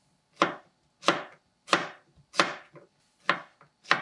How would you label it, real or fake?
real